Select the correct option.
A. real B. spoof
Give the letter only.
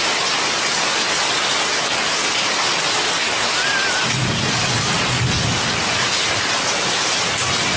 A